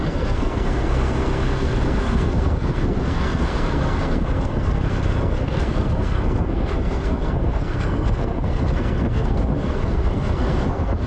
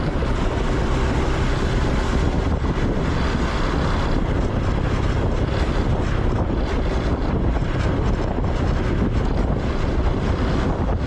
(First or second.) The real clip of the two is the second